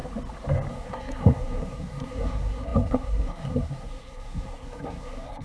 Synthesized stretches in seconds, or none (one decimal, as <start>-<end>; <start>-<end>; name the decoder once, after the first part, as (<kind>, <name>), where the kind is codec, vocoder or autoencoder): 0.7-5.4 (codec, SNAC)